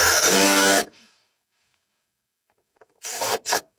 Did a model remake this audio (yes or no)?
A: yes